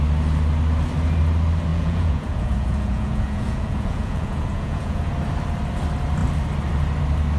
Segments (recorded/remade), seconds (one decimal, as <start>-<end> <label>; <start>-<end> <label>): 0.0-1.7 recorded; 1.7-5.1 remade; 5.1-7.4 recorded